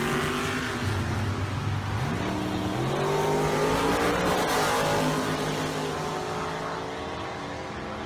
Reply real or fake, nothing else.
real